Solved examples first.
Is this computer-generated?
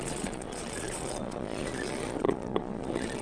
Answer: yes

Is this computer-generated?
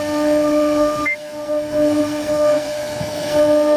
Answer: yes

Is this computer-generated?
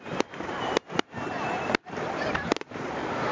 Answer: no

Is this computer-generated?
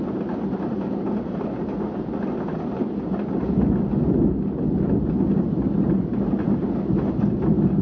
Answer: no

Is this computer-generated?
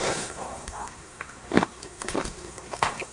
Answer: yes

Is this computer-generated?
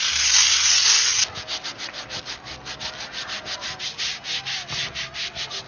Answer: no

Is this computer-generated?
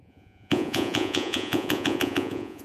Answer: yes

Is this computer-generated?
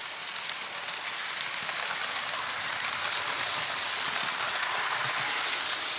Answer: yes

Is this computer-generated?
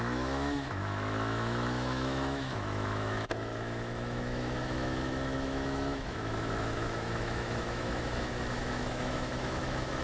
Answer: yes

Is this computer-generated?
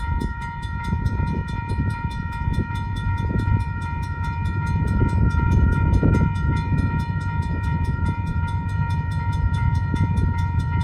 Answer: yes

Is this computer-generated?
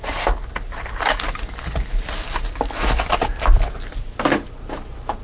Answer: no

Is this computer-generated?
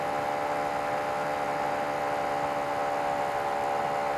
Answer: no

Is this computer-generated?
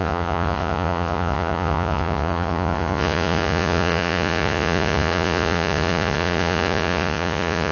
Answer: yes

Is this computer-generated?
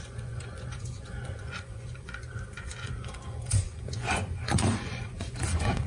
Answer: yes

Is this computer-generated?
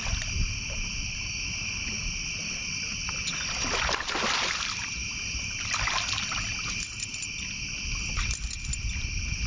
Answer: no